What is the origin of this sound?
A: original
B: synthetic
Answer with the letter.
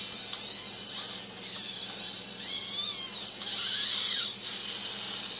A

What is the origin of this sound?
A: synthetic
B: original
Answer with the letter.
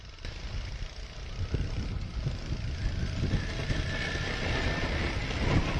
B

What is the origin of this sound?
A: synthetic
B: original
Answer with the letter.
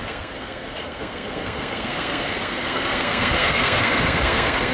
A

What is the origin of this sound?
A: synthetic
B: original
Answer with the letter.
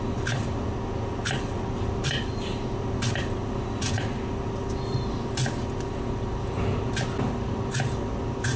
B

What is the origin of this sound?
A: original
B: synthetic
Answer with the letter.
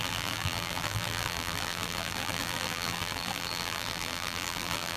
B